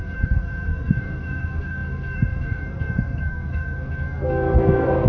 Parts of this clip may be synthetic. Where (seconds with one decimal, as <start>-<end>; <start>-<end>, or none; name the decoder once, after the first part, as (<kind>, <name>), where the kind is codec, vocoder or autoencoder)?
0.0-5.1 (codec, SNAC)